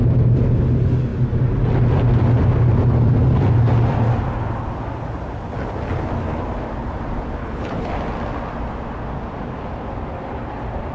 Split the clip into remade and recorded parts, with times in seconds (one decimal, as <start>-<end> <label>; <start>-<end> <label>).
0.0-7.4 recorded; 7.4-7.9 remade; 7.9-10.9 recorded